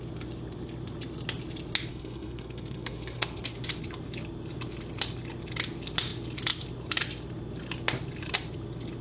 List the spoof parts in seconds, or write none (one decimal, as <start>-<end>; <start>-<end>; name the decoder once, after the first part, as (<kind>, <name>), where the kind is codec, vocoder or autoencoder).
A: 1.9-3.5 (codec, SNAC)